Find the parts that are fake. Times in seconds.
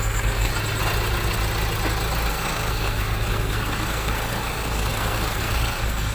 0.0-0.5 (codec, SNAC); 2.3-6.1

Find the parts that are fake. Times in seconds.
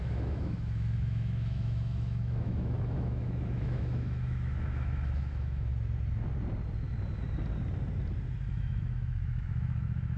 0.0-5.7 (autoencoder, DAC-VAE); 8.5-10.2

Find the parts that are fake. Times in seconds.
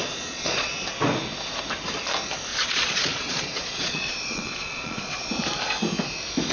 0.0-0.7 (vocoder, Vocos); 2.5-5.3